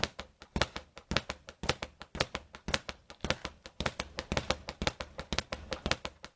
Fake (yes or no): no